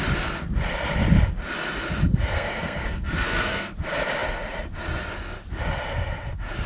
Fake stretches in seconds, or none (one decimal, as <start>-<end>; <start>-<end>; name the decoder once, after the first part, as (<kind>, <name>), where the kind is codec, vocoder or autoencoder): 2.0-3.7 (codec, SNAC)